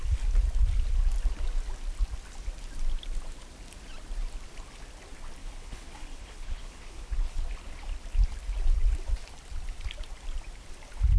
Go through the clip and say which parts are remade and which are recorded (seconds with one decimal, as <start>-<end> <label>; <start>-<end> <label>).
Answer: 0.0-5.4 recorded; 5.4-7.4 remade; 7.4-11.2 recorded